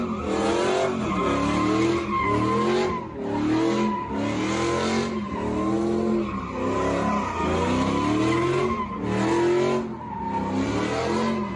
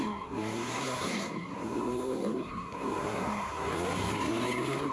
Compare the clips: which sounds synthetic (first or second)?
second